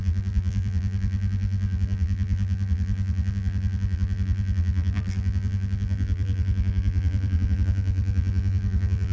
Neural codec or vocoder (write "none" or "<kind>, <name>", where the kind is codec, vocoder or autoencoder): vocoder, BigVGAN v2